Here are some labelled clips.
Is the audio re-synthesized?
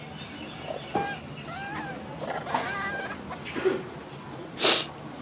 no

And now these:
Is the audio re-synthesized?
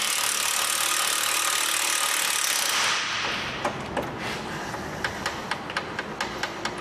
no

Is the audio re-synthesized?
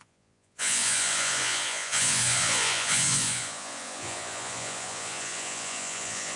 yes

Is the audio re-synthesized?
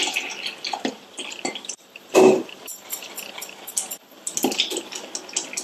no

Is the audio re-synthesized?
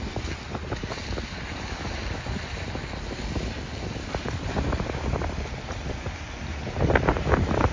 no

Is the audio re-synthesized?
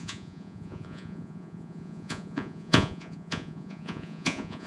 yes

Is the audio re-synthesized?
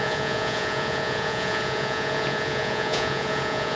yes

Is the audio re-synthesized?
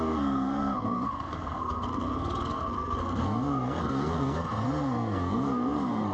yes